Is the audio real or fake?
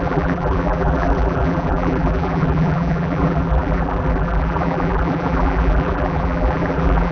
fake